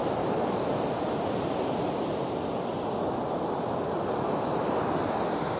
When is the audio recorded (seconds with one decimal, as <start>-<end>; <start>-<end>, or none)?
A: 0.0-5.6